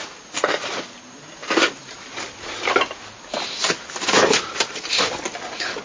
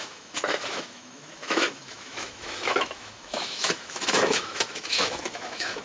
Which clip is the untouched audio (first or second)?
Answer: first